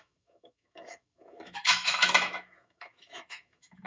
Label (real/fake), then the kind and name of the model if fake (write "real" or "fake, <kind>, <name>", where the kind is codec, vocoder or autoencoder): fake, autoencoder, DAC-VAE